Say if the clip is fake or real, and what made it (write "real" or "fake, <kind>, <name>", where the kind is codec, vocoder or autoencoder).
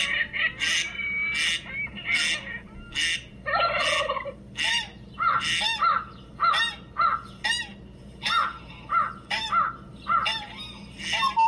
real